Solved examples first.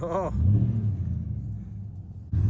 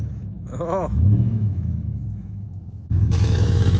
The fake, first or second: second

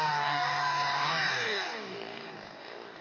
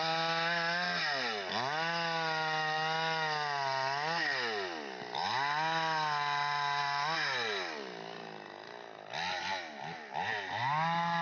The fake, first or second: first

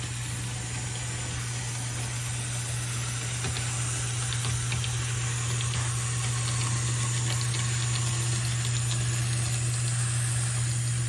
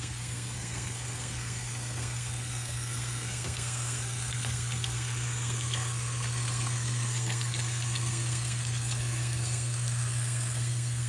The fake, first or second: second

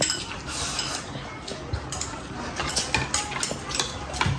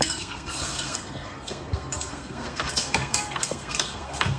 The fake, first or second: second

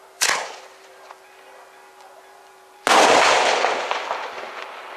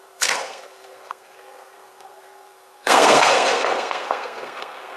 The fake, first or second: second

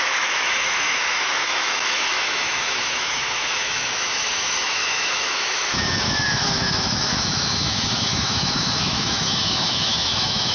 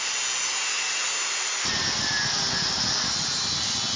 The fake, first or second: first